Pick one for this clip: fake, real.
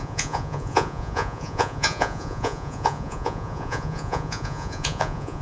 fake